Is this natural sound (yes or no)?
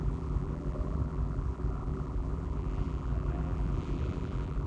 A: no